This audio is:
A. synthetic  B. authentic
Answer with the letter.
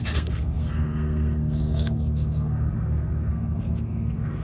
A